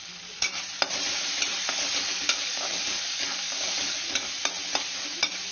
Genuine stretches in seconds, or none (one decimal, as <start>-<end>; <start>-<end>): 0.5-2.0; 4.4-5.5